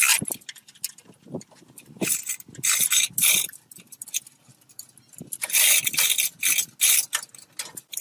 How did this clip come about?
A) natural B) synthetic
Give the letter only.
A